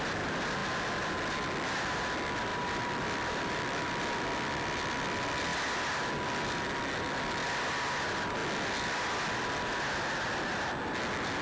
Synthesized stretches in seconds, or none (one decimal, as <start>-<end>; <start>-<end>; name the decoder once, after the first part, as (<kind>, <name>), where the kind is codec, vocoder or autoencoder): 2.5-3.9 (vocoder, BigVGAN v2)